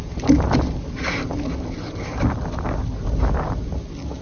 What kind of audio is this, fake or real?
real